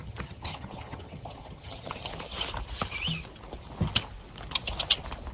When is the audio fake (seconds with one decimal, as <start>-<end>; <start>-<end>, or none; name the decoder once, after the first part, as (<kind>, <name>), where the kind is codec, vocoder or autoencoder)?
0.0-2.1 (vocoder, HiFi-GAN)